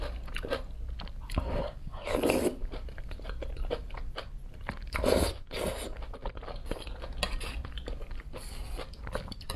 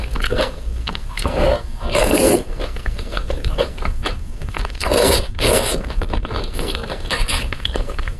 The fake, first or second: second